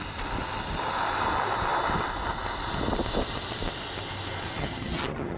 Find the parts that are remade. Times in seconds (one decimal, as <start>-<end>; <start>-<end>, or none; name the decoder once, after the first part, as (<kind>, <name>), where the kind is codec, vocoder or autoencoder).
4.6-5.4 (vocoder, HiFi-GAN)